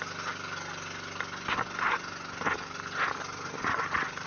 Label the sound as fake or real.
real